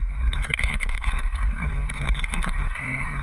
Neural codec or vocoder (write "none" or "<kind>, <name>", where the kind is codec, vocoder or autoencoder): codec, SNAC